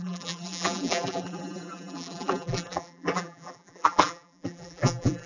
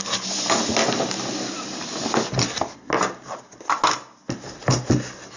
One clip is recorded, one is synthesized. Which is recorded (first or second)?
second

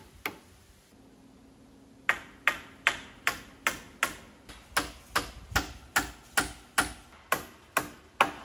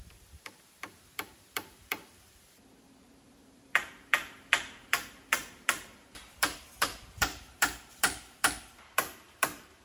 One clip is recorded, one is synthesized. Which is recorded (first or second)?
first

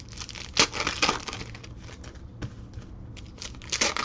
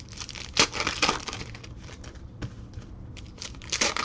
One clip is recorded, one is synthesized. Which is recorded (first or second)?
first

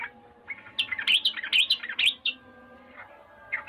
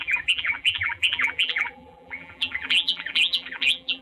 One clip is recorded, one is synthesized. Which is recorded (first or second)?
first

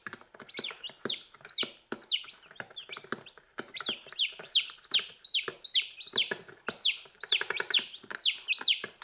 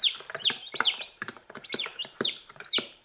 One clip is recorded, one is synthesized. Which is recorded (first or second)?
first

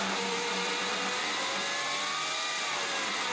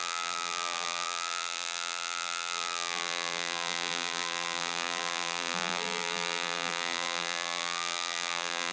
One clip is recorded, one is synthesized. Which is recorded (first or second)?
first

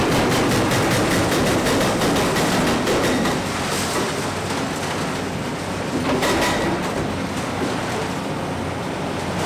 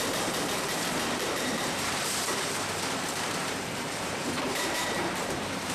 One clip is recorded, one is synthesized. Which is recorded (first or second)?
first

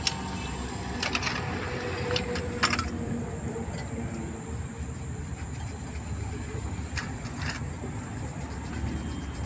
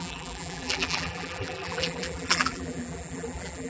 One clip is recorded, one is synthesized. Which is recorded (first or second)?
first